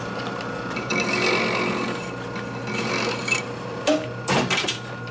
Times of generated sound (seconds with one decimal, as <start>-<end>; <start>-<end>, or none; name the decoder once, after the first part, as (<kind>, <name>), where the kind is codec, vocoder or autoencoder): 0.0-0.9 (vocoder, BigVGAN v2); 3.2-5.1